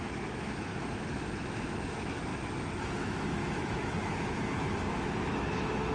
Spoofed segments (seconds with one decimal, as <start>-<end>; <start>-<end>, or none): 0.0-5.9